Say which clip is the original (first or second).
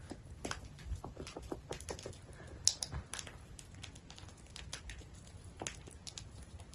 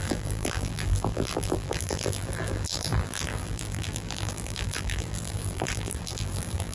first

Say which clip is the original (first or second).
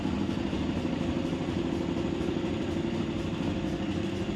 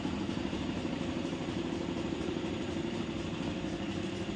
first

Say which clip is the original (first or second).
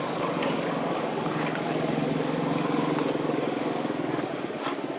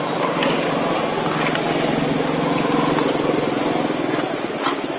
second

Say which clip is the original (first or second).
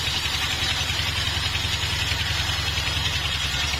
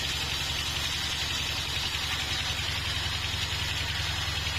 second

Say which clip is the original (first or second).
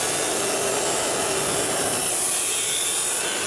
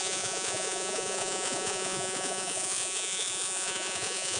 first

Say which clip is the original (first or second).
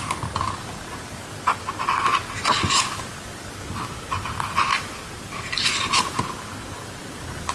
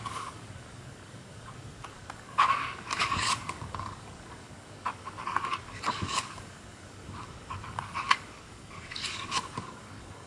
first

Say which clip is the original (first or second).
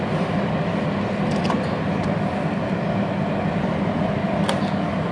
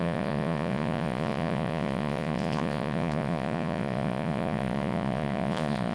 first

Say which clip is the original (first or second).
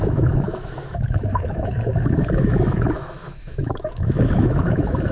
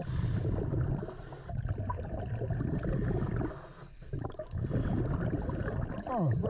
second